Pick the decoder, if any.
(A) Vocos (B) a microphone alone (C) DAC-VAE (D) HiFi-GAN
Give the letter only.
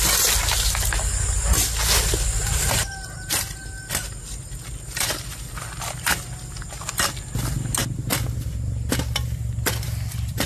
B